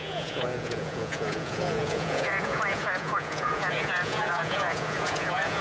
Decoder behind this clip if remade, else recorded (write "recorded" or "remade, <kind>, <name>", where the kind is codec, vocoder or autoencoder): remade, vocoder, Vocos